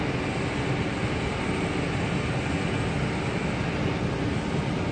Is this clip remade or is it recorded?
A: recorded